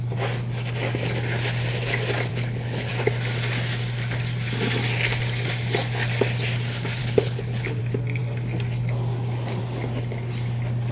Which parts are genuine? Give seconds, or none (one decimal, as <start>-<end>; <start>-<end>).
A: 0.0-2.3; 2.9-7.0; 7.8-10.9